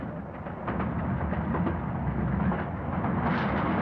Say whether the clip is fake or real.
real